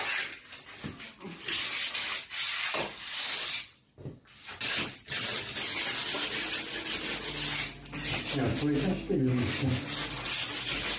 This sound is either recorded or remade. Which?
recorded